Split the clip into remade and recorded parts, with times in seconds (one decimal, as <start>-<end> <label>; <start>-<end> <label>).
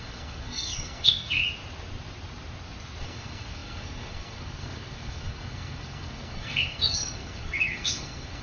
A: 0.0-1.4 remade; 1.4-3.0 recorded; 3.0-8.4 remade